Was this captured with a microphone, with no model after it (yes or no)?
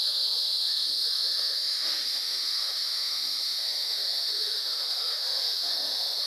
no